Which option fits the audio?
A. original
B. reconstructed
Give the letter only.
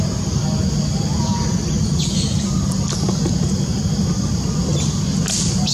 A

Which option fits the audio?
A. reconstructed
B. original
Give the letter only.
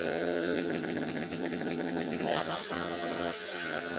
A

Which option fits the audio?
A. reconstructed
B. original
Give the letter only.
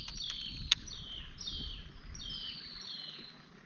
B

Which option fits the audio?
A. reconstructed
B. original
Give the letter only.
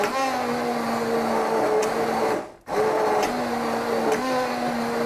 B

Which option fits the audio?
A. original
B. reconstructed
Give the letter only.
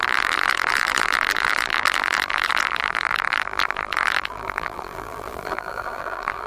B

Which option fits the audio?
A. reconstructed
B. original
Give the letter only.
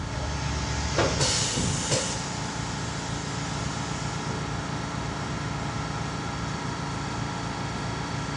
B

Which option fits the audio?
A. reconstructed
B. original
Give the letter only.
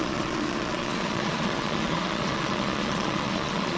A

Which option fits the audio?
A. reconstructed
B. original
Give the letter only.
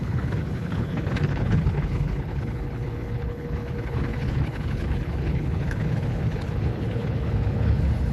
A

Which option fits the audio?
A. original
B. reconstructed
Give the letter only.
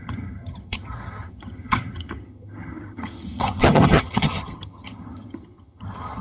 B